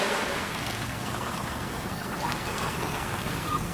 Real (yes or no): no